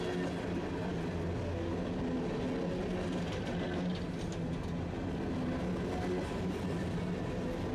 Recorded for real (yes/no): yes